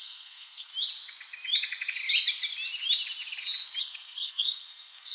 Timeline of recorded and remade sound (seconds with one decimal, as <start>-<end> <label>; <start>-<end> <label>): 0.0-0.7 remade; 0.7-3.8 recorded; 3.8-5.1 remade